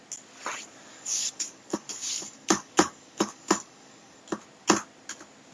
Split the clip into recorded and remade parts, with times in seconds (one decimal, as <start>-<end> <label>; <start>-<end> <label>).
0.0-0.9 recorded; 0.9-4.2 remade; 4.2-5.5 recorded